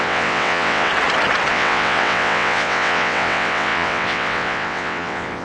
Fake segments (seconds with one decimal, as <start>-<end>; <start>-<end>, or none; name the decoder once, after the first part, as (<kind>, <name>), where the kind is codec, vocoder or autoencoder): 0.0-0.9 (vocoder, WaveNeXt); 1.5-5.4

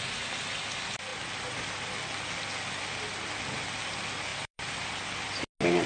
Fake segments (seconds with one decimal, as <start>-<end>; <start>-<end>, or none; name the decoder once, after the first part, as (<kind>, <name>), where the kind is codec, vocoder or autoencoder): 4.3-4.9 (vocoder, BigVGAN v2)

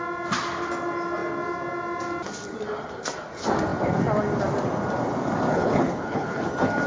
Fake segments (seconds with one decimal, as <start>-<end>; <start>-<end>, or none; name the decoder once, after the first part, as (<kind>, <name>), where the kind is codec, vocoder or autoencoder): 5.5-6.5 (codec, HILCodec)